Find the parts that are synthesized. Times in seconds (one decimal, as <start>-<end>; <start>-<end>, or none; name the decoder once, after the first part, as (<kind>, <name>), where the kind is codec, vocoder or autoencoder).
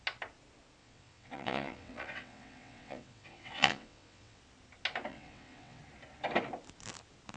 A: 0.8-4.4 (vocoder, WaveNeXt); 5.1-5.8